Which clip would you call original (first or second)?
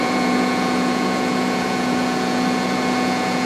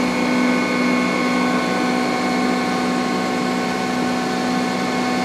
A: second